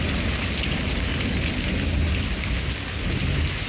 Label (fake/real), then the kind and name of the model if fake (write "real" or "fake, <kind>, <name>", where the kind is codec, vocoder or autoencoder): real